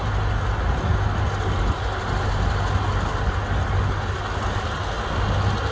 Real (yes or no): yes